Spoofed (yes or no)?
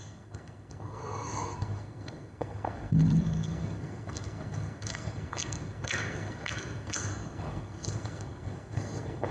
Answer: yes